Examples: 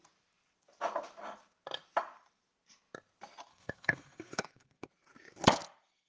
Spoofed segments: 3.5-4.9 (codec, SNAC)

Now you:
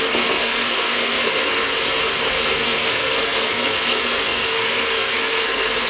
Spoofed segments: 0.0-1.6 (codec, SNAC); 2.3-5.9

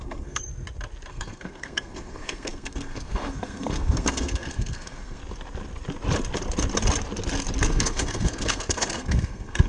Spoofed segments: 0.0-0.4 (codec, SNAC); 1.1-5.2; 7.6-9.7

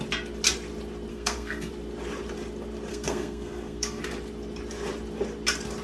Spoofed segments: 1.1-1.7 (codec, SNAC); 2.9-4.0